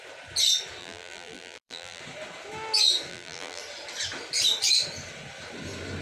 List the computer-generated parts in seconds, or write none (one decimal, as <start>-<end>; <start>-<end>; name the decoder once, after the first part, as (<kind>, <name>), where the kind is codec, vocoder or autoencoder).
0.8-2.0 (vocoder, BigVGAN v2); 3.1-3.6